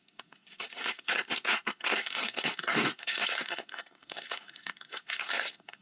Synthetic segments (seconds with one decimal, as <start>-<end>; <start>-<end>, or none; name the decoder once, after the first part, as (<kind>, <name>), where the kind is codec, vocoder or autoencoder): 0.0-5.8 (codec, SNAC)